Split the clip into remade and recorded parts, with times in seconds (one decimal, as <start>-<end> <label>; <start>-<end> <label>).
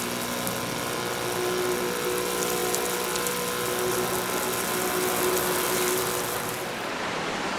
0.0-7.6 recorded